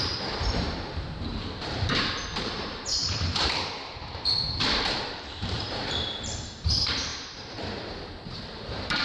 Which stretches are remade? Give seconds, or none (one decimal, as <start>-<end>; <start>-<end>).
0.0-9.0